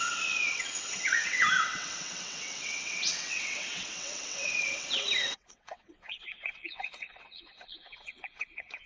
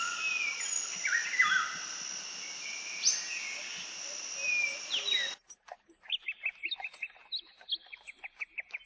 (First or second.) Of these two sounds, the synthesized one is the first